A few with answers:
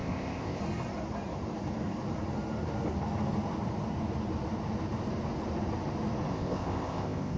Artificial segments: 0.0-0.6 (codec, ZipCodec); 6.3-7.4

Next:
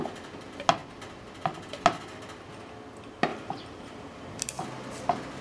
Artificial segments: 3.3-4.6 (vocoder, BigVGAN v2)

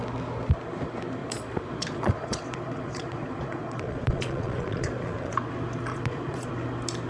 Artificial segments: 1.2-5.5 (vocoder, Vocos); 5.9-6.5

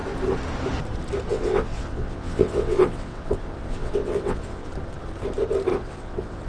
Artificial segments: 1.3-4.7 (vocoder, WaveNeXt); 5.7-6.5

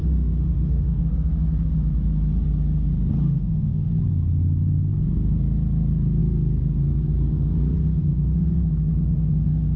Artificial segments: 0.0-1.0 (autoencoder, DAC-VAE); 3.2-3.9

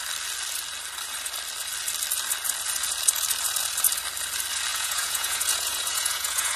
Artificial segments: 4.7-6.6 (vocoder, Vocos)